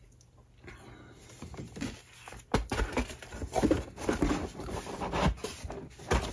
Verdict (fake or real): real